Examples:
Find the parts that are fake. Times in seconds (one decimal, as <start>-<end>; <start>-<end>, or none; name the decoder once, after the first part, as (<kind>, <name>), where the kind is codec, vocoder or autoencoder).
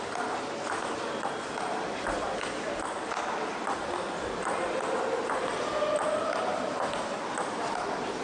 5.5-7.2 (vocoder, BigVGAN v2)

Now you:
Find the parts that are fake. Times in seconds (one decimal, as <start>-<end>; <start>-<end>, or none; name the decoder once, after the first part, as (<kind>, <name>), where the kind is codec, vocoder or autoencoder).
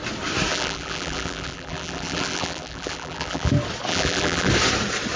0.5-3.5 (vocoder, BigVGAN v2); 3.9-4.5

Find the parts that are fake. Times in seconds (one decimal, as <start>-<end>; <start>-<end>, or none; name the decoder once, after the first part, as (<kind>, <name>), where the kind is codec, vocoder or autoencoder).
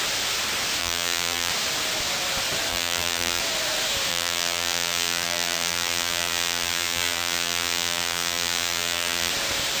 0.8-1.5 (vocoder, BigVGAN v2); 2.7-3.4; 4.1-9.3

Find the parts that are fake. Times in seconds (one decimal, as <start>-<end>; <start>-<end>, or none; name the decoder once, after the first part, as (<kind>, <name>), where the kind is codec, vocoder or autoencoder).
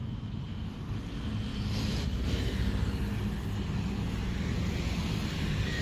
0.0-0.9 (vocoder, BigVGAN v2); 1.5-3.2